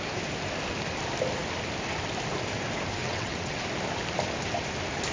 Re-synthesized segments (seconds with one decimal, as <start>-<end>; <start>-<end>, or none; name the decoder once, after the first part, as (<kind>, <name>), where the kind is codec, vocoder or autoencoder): 3.0-3.6 (vocoder, WaveNeXt)